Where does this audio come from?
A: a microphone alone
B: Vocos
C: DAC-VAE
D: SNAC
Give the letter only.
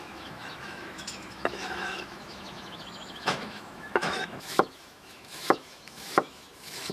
C